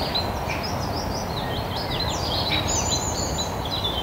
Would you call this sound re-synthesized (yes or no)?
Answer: no